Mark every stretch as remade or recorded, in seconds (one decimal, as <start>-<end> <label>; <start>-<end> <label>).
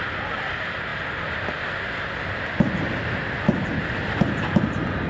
0.0-5.1 recorded